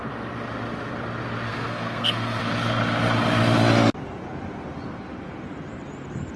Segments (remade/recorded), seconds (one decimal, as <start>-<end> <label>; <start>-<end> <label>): 0.0-1.5 recorded; 1.5-2.4 remade; 2.4-6.4 recorded